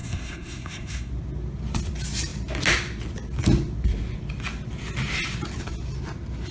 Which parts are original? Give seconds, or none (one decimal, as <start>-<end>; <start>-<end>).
1.1-6.5